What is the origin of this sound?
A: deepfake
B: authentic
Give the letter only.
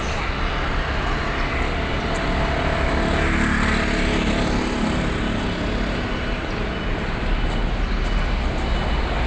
B